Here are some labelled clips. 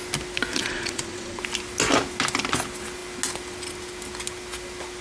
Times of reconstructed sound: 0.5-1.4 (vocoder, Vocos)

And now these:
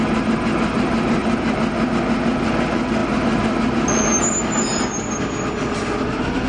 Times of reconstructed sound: none

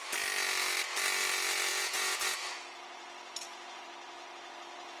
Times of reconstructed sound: 1.7-3.8 (vocoder, Vocos)

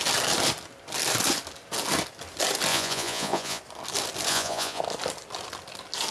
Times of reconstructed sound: 2.7-3.6 (vocoder, Vocos); 4.3-4.8

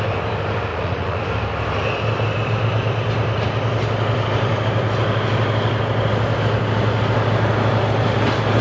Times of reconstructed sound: 0.7-1.2 (vocoder, Vocos)

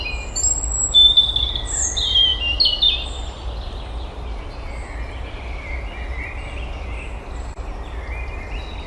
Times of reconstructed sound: none

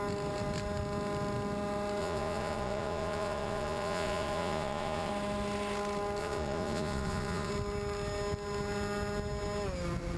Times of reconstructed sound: 2.0-5.1 (vocoder, Vocos); 6.2-7.5